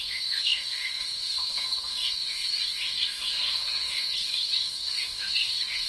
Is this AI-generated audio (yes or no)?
yes